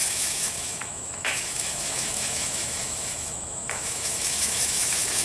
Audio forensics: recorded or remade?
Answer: remade